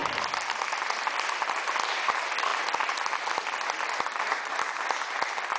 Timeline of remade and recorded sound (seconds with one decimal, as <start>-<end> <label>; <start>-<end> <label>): 0.0-5.6 recorded